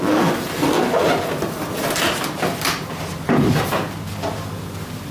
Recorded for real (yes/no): yes